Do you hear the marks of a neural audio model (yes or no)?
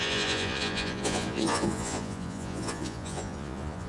yes